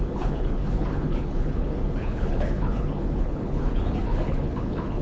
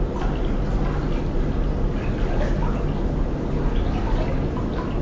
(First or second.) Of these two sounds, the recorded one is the second